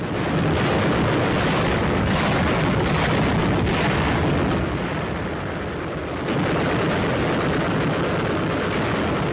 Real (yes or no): yes